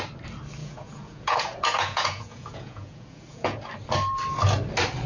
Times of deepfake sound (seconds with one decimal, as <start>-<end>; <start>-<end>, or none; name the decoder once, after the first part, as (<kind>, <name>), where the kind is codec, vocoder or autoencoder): 0.6-3.7 (vocoder, Vocos)